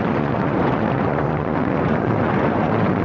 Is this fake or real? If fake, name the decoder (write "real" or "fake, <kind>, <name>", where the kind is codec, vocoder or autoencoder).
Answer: fake, vocoder, Vocos